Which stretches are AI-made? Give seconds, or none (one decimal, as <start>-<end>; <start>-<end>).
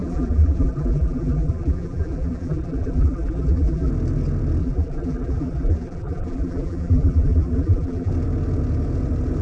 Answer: 0.0-3.9; 4.6-8.1